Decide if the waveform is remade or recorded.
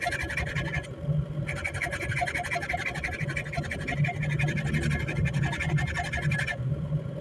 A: recorded